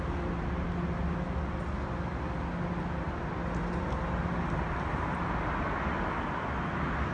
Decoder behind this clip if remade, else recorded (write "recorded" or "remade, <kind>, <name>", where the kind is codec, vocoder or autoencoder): recorded